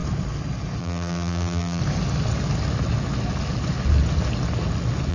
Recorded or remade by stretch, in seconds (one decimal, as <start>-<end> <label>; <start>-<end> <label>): 0.0-0.8 recorded; 0.8-1.8 remade; 1.8-5.1 recorded